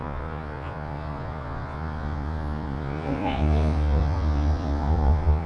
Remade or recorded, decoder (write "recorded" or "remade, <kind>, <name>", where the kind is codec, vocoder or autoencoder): remade, vocoder, Vocos